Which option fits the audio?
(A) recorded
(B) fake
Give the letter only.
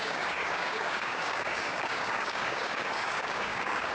B